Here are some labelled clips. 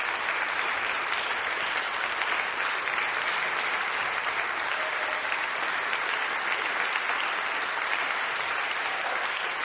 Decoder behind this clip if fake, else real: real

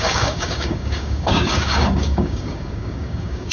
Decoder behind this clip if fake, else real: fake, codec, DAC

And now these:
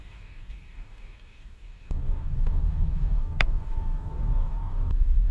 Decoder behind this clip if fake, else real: fake, codec, DAC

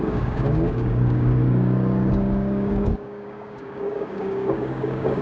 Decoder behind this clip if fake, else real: fake, codec, DAC